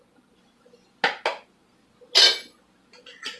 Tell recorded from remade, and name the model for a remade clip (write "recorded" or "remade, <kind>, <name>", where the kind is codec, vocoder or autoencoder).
recorded